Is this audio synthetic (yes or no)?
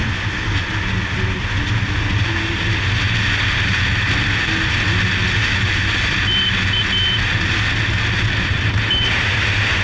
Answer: no